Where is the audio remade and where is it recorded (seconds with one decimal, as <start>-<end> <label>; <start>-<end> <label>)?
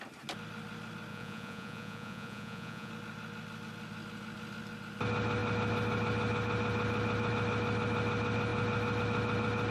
0.0-1.1 recorded; 1.1-2.9 remade; 2.9-9.7 recorded